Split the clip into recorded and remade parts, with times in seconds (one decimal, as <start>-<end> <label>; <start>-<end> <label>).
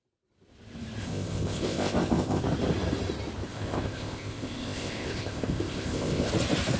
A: 0.0-1.0 recorded; 1.0-2.4 remade; 2.4-3.5 recorded; 3.5-6.3 remade; 6.3-6.8 recorded